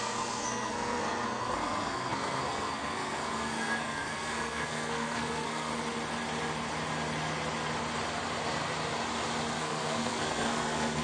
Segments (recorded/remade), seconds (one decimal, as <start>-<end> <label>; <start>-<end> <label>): 0.0-5.7 remade; 5.7-9.6 recorded; 9.6-11.0 remade